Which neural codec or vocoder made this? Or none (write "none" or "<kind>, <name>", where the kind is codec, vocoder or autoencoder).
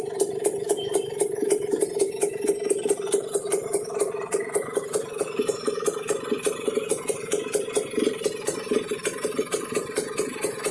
vocoder, BigVGAN v2